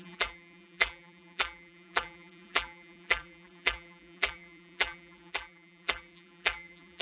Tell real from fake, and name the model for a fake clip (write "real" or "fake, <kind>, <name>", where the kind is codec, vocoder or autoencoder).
fake, vocoder, BigVGAN v2